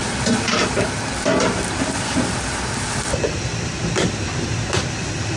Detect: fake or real fake